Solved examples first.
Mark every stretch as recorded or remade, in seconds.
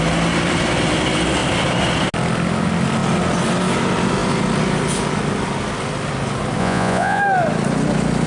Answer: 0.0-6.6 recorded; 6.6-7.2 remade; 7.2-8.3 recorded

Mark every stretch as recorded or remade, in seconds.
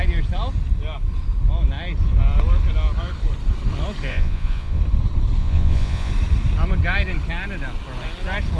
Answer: 0.0-4.1 recorded; 4.1-4.8 remade; 4.8-5.4 recorded; 5.4-6.1 remade; 6.1-8.6 recorded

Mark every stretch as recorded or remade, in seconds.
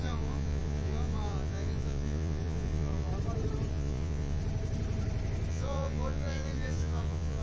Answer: 0.0-3.1 remade; 3.1-3.7 recorded; 3.7-4.4 remade; 4.4-5.5 recorded; 5.5-7.4 remade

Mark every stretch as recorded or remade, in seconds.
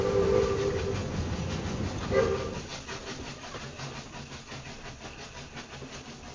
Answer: 0.0-1.0 recorded; 1.0-2.0 remade; 2.0-6.3 recorded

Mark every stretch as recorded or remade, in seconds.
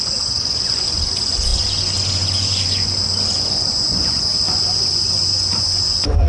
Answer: 0.0-6.3 remade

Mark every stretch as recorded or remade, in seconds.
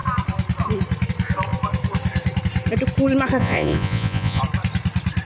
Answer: 0.0-3.4 recorded; 3.4-4.4 remade; 4.4-5.2 recorded